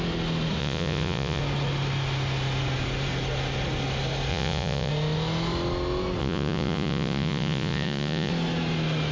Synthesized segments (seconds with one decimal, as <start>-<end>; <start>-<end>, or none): 0.6-1.4; 4.3-4.9; 6.2-8.3